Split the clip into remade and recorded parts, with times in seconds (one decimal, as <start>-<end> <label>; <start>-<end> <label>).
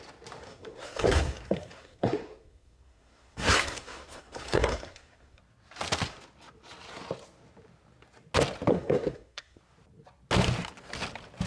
0.0-0.4 recorded; 0.4-5.4 remade; 5.4-8.7 recorded; 8.7-9.6 remade; 9.6-11.5 recorded